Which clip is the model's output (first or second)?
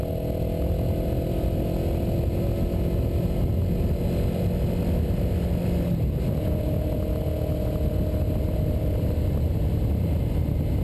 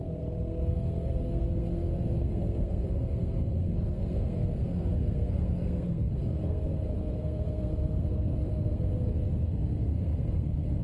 second